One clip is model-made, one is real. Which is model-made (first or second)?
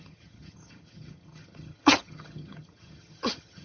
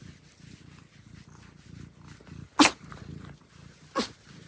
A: first